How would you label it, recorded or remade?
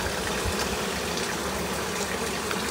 recorded